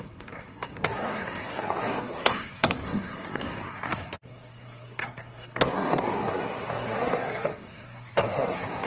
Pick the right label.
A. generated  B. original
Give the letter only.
A